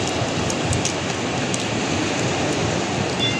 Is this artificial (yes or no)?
no